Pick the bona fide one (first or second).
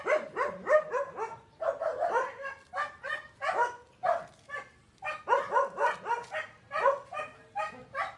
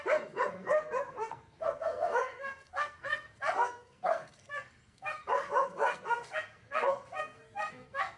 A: first